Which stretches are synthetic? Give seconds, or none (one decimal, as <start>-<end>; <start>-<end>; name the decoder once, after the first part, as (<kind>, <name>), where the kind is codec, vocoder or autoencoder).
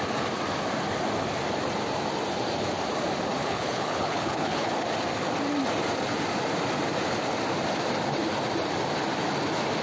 3.4-4.7 (codec, HILCodec)